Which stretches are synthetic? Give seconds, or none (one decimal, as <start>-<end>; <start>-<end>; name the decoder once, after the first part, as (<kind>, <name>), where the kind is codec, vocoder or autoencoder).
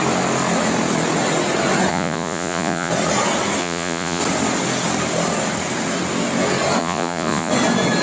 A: 1.9-2.9 (vocoder, Vocos); 3.6-4.2; 6.8-7.5